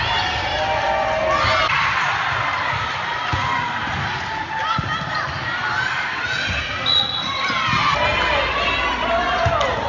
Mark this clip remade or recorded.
recorded